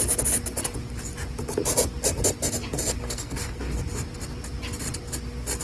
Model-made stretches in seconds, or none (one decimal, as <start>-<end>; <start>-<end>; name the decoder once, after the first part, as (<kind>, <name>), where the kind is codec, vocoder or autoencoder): 3.0-3.8 (codec, SNAC)